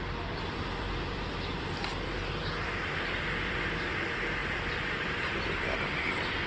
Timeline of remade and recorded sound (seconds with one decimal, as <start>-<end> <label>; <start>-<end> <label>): 0.0-1.8 remade; 1.8-2.9 recorded; 2.9-6.5 remade